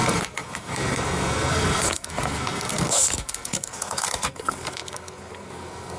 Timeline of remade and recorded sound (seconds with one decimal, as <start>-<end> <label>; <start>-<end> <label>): 0.0-6.0 remade